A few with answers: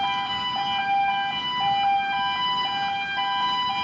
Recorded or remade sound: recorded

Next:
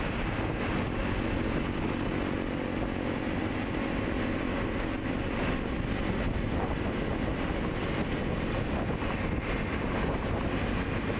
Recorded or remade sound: recorded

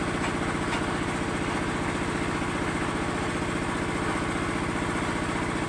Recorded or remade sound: recorded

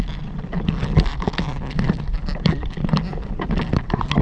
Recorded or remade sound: recorded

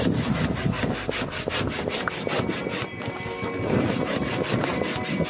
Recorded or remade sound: recorded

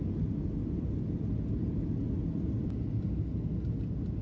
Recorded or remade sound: recorded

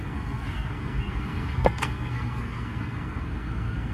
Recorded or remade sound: remade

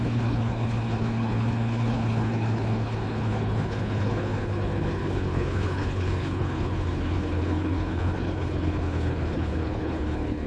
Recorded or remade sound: remade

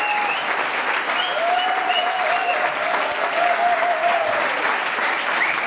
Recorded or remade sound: recorded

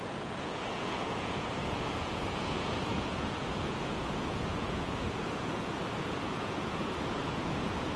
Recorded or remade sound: remade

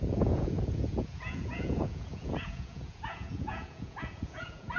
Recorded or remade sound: remade